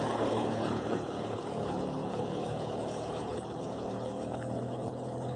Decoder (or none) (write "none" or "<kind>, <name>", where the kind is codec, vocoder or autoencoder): codec, HILCodec